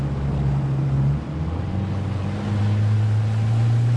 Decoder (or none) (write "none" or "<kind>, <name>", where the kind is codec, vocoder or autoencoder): none